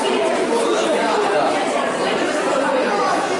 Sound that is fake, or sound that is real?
fake